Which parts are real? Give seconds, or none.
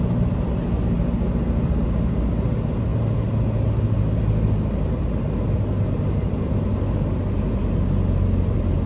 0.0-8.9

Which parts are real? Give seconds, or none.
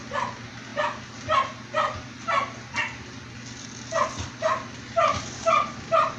0.0-6.2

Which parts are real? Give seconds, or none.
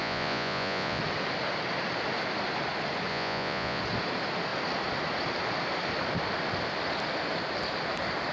1.0-3.1; 3.8-8.3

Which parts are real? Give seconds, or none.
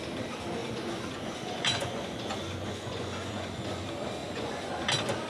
0.0-0.6; 3.8-4.2; 4.7-5.3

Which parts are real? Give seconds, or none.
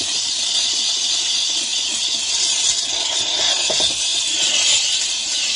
0.0-5.6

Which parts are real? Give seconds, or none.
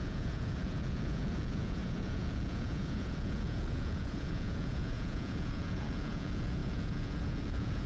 none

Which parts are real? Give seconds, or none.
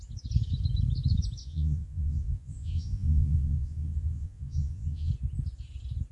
0.0-1.4; 5.1-6.1